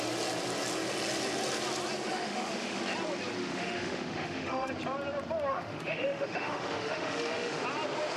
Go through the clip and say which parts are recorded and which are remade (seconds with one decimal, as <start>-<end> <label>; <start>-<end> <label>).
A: 0.0-2.1 recorded; 2.1-2.8 remade; 2.8-3.4 recorded; 3.4-4.7 remade; 4.7-5.5 recorded; 5.5-7.6 remade; 7.6-8.2 recorded